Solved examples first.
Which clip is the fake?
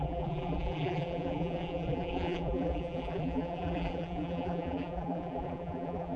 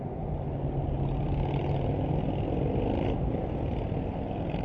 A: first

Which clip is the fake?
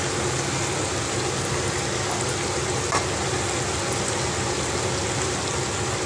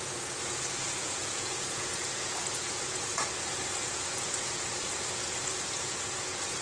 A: second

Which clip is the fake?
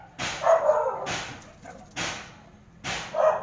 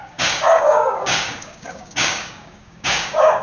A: second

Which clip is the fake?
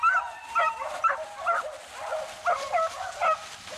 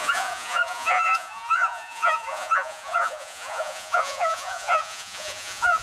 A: second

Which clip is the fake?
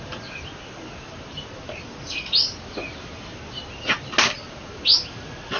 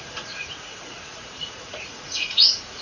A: second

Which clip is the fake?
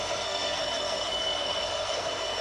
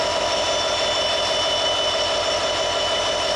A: first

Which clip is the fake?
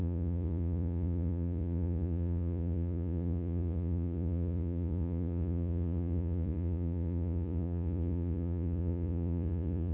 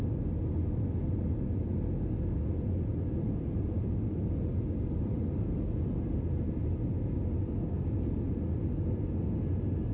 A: first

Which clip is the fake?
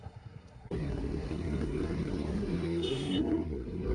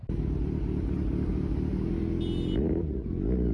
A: first